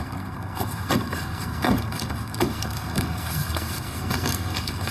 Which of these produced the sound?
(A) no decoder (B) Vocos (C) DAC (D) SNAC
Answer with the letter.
D